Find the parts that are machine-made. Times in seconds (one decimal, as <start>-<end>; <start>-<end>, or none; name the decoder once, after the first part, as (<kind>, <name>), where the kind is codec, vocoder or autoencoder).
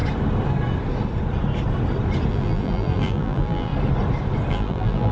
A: 2.3-3.7 (vocoder, BigVGAN v2); 4.5-5.1